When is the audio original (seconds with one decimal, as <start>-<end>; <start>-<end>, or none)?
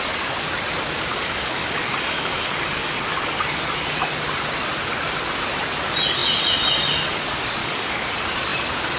0.0-1.1; 3.4-7.6; 8.1-9.0